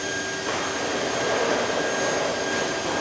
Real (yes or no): yes